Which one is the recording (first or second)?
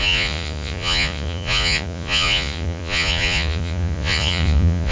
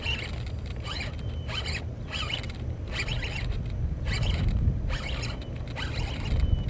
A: second